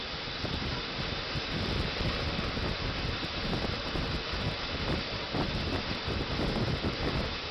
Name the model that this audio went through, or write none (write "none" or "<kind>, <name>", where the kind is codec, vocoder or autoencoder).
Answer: none